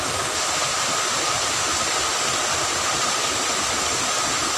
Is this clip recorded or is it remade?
recorded